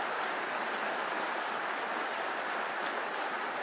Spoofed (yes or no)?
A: no